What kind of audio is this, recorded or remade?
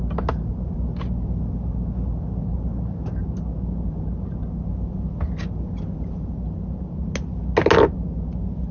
recorded